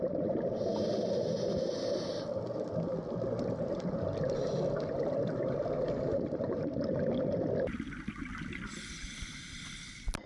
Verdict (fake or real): real